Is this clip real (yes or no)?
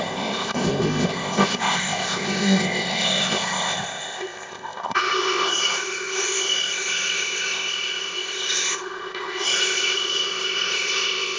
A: no